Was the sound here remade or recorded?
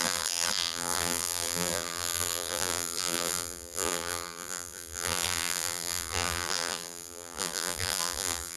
remade